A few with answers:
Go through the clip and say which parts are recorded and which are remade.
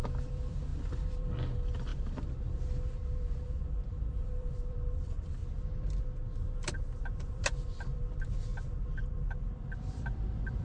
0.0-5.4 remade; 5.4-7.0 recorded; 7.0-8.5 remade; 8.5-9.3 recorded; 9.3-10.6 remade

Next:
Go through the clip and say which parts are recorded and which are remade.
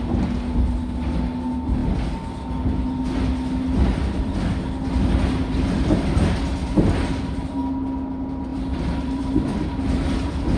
0.0-8.5 recorded; 8.5-9.7 remade; 9.7-10.6 recorded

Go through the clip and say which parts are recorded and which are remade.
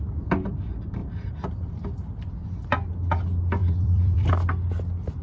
0.0-1.0 recorded; 1.0-2.3 remade; 2.3-3.6 recorded; 3.6-4.3 remade; 4.3-5.2 recorded